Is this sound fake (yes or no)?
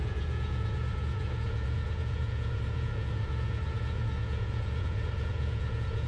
yes